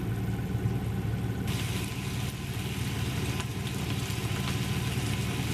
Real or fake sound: real